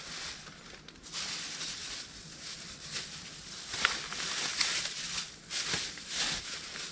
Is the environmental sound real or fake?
real